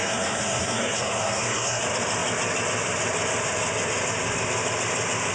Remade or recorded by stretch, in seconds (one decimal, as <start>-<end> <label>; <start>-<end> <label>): 0.0-1.8 remade; 1.8-5.3 recorded